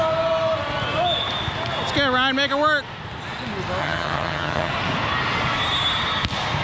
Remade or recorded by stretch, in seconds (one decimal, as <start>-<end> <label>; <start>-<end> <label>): 0.0-3.8 recorded; 3.8-4.7 remade; 4.7-6.6 recorded